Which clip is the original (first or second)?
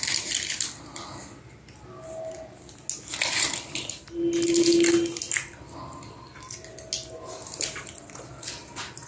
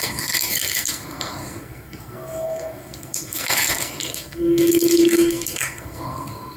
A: first